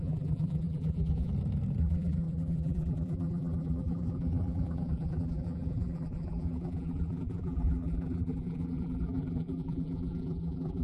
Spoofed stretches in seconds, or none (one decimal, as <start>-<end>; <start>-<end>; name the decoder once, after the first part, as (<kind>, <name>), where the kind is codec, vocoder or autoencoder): 0.0-1.3 (vocoder, BigVGAN v2); 1.8-10.8